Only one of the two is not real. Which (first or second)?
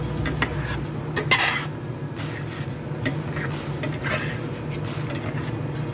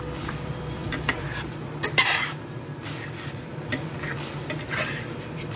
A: second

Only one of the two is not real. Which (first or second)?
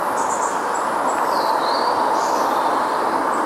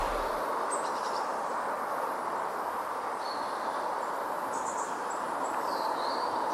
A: second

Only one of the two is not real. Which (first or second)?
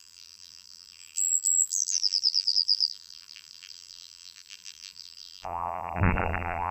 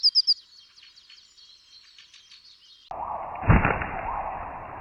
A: first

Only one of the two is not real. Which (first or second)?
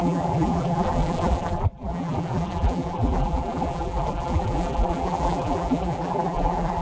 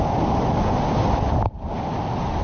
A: first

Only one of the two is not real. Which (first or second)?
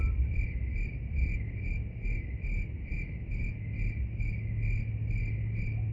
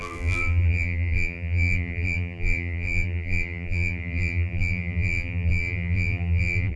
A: second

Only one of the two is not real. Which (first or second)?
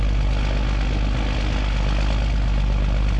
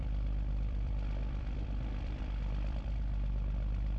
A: second